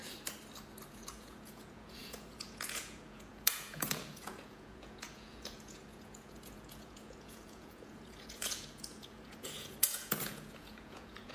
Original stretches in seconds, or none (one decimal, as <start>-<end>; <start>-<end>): 0.0-0.9